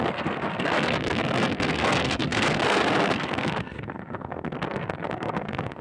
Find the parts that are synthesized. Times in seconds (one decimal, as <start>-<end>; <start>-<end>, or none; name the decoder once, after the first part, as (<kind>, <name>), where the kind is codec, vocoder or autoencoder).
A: 0.0-5.8 (codec, SNAC)